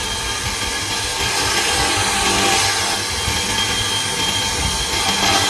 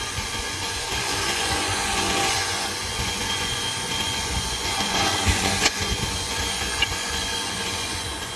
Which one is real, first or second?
first